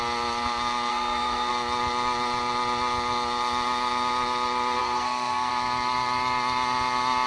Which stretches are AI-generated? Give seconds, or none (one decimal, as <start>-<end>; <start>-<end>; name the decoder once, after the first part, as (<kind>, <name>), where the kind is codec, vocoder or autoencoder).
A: 0.9-1.5 (codec, SNAC); 4.8-5.5